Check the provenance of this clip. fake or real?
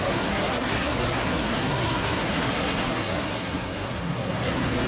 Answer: fake